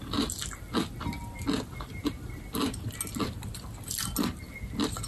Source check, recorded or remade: recorded